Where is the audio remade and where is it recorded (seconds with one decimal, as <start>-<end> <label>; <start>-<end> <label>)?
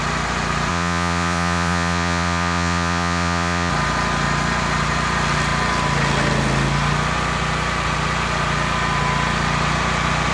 0.0-0.7 recorded; 0.7-3.7 remade; 3.7-10.3 recorded